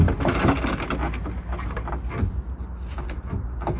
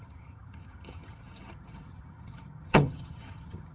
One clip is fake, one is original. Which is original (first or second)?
first